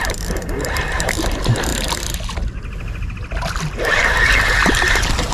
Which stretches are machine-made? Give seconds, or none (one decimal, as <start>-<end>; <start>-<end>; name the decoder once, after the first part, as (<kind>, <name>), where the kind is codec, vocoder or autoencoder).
none